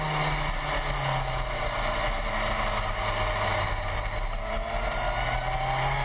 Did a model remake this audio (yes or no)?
no